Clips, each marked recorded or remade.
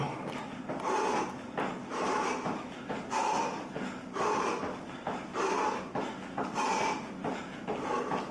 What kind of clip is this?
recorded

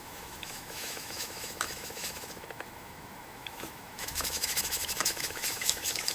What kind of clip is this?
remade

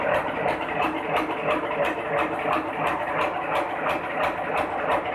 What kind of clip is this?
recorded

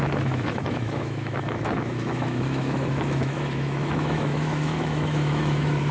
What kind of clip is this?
remade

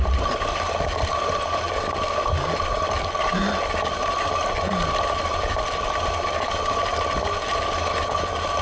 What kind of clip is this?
recorded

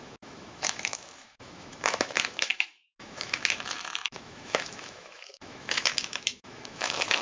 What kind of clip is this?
remade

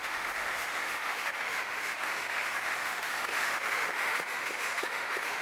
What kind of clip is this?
remade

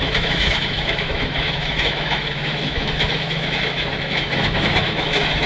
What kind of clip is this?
remade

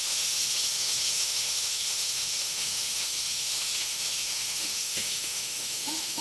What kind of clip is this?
remade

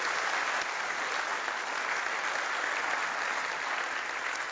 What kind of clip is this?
recorded